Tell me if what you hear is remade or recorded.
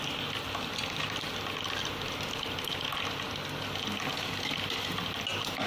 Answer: recorded